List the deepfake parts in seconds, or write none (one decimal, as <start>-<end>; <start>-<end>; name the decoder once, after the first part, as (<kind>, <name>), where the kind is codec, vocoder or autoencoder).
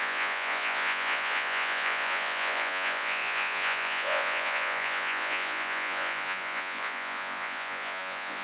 0.0-8.4 (vocoder, Vocos)